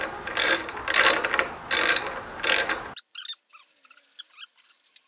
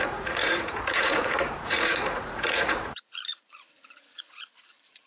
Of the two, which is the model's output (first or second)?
second